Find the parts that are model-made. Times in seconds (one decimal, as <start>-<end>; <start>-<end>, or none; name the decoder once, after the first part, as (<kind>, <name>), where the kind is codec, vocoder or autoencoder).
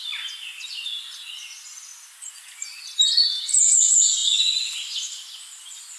none